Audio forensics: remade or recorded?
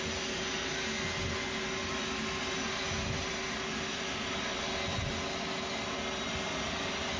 recorded